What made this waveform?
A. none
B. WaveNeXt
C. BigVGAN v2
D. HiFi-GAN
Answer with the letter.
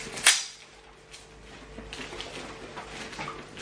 A